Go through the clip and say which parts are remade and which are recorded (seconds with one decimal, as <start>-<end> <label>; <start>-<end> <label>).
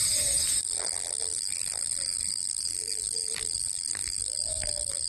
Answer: 0.0-0.6 recorded; 0.6-5.1 remade